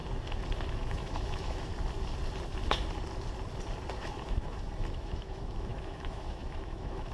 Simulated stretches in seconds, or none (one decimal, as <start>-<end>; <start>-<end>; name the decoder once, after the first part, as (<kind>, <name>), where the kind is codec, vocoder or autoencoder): 0.7-1.7 (autoencoder, DAC-VAE); 4.0-7.1